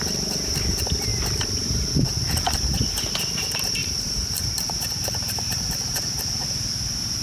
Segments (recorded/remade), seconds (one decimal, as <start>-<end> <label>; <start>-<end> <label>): 0.0-1.1 recorded; 1.1-1.9 remade; 1.9-3.8 recorded; 3.8-5.6 remade; 5.6-7.2 recorded